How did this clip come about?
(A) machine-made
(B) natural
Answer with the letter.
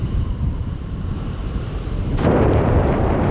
A